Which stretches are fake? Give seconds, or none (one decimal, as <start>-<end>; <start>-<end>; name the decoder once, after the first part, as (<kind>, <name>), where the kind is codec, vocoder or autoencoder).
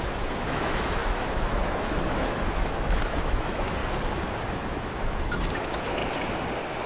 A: 0.0-3.8 (autoencoder, DAC-VAE); 4.5-6.0